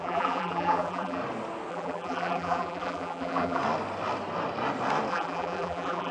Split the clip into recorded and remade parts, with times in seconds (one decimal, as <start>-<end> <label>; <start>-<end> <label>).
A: 0.0-1.2 remade; 1.2-1.7 recorded; 1.7-3.6 remade; 3.6-5.1 recorded; 5.1-6.1 remade